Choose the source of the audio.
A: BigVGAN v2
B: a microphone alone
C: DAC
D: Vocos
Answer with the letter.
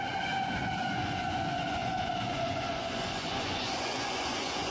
D